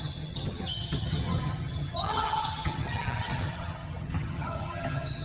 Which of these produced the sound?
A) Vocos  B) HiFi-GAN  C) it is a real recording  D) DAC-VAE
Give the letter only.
B